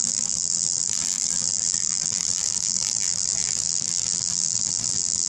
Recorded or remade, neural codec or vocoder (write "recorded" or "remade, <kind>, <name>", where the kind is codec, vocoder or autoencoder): remade, vocoder, BigVGAN v2